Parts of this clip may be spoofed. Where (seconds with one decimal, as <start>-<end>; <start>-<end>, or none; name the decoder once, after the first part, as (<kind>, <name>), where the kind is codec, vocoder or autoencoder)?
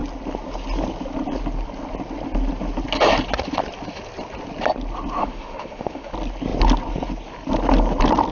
5.2-6.1 (autoencoder, DAC-VAE)